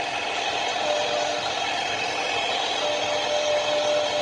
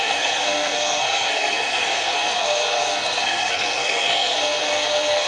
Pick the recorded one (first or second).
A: first